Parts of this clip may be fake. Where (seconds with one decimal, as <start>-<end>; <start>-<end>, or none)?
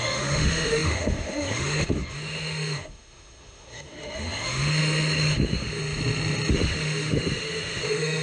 0.0-5.8; 6.5-8.2